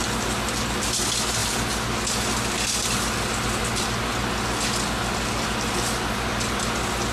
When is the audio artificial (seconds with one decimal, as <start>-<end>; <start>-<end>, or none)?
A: 1.4-3.6; 4.1-5.7